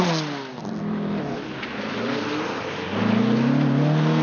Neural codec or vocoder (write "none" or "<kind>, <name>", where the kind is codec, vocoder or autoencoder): none